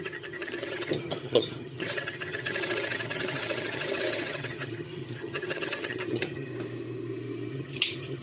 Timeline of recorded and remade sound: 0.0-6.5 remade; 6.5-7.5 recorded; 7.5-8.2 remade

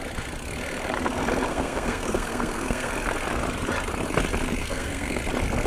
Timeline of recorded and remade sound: 0.0-1.5 recorded; 1.5-2.9 remade; 2.9-4.6 recorded; 4.6-5.2 remade; 5.2-5.7 recorded

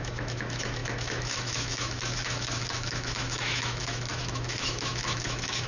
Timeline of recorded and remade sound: 0.0-5.7 remade

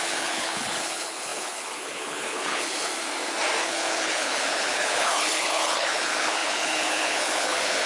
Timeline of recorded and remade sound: 0.0-2.9 remade; 2.9-3.6 recorded; 3.6-7.9 remade

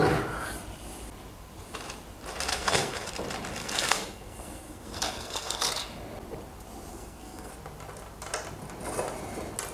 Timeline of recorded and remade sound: 0.0-2.5 recorded; 2.5-3.1 remade; 3.1-3.6 recorded; 3.6-5.7 remade; 5.7-6.9 recorded; 6.9-7.5 remade; 7.5-9.7 recorded

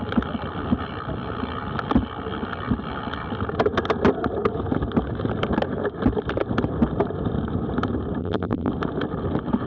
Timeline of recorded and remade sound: 0.0-8.2 recorded; 8.2-8.7 remade; 8.7-9.7 recorded